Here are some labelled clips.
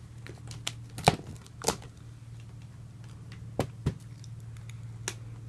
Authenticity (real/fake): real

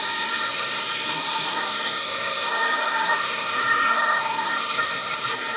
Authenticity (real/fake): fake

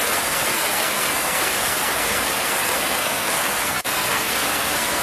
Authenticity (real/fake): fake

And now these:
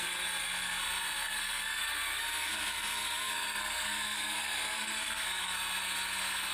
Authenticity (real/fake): fake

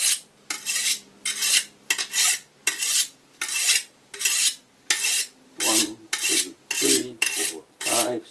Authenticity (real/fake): fake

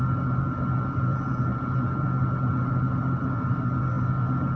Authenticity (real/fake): real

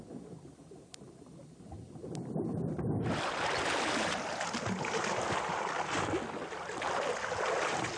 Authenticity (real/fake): real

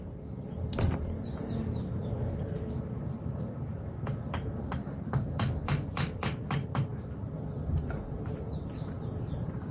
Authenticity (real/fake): fake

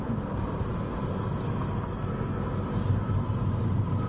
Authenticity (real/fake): real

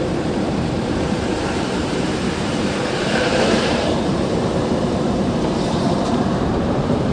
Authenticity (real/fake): fake